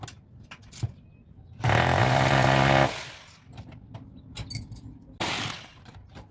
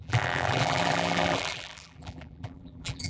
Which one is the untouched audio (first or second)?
first